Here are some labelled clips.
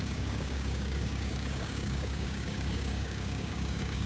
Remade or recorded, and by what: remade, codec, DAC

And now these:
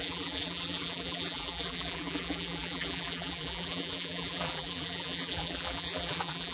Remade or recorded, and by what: remade, vocoder, BigVGAN v2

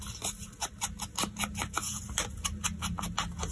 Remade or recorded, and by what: recorded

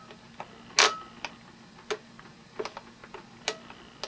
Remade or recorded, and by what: recorded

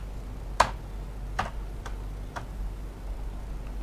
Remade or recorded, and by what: recorded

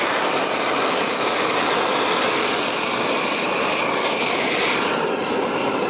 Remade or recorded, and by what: recorded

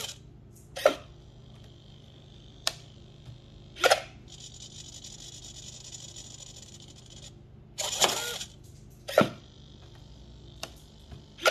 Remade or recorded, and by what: recorded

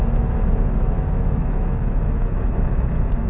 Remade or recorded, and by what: remade, autoencoder, DAC-VAE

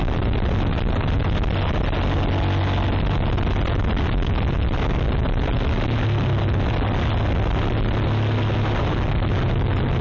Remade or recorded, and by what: recorded